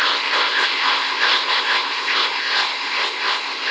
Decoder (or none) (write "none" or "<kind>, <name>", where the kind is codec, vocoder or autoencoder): codec, ZipCodec